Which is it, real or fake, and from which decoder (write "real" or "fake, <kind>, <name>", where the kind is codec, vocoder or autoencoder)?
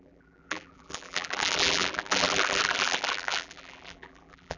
fake, vocoder, BigVGAN v2